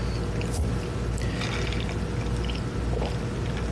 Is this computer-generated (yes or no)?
no